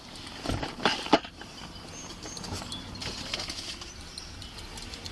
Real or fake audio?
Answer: real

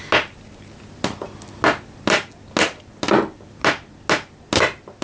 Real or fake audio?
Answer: real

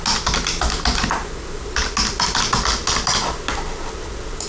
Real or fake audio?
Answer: real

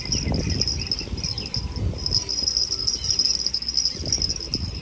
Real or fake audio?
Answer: real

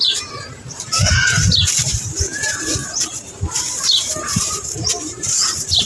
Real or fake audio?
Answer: fake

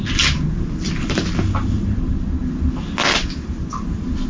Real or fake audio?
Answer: real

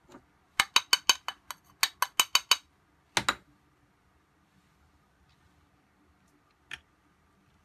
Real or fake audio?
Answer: real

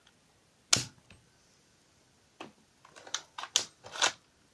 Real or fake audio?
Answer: real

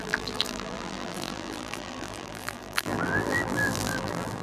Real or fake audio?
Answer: fake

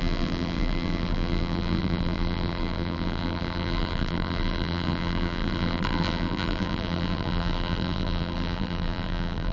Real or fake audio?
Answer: fake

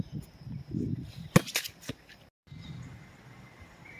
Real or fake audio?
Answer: real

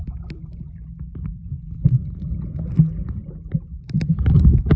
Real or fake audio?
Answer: real